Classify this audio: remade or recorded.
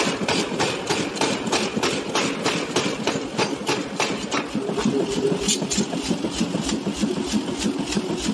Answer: recorded